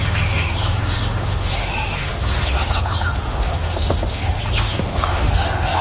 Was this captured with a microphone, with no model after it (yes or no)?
no